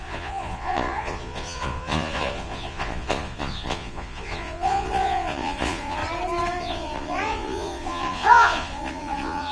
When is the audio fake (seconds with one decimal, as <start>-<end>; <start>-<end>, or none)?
0.0-6.0; 6.6-9.5